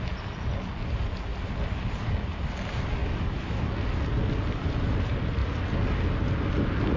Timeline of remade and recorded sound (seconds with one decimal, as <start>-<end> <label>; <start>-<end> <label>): 0.0-3.0 recorded; 3.0-3.7 remade; 3.7-7.0 recorded